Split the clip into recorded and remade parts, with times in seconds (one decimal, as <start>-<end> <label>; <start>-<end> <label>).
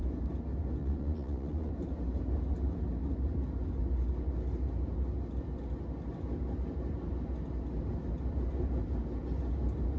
0.0-0.8 recorded; 0.8-1.7 remade; 1.7-10.0 recorded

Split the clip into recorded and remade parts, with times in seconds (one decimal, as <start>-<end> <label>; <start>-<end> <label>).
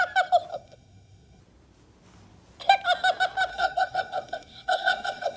0.0-0.5 recorded; 0.5-1.4 remade; 1.4-3.5 recorded; 3.5-5.4 remade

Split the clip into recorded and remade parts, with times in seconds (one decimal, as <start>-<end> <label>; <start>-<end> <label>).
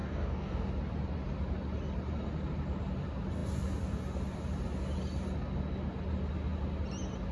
0.0-0.7 remade; 0.7-7.3 recorded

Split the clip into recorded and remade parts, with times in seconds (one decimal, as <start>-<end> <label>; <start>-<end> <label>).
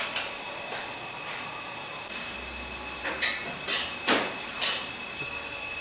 0.0-3.7 recorded; 3.7-4.9 remade; 4.9-5.8 recorded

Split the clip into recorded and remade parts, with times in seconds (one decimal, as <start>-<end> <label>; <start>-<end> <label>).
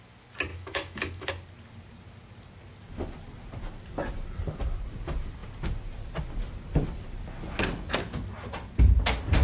0.0-0.5 recorded; 0.5-1.3 remade; 1.3-9.4 recorded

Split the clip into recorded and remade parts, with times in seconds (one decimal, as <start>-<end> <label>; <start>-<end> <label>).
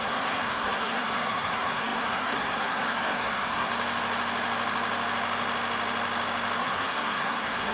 0.0-3.7 remade; 3.7-6.6 recorded; 6.6-7.7 remade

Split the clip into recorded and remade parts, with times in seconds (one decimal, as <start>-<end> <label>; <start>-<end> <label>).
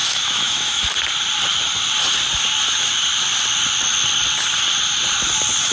0.0-0.9 remade; 0.9-5.7 recorded